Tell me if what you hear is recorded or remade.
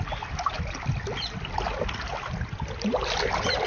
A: recorded